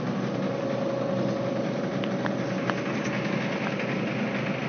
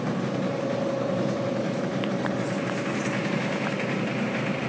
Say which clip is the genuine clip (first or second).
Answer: first